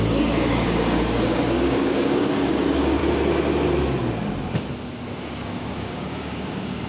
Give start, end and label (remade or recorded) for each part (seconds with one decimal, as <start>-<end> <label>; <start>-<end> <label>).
0.0-3.0 remade; 3.0-5.4 recorded; 5.4-6.9 remade